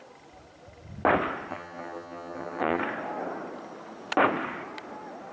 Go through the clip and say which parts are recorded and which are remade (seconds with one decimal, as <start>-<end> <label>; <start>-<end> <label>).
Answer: 0.0-1.5 recorded; 1.5-2.8 remade; 2.8-5.3 recorded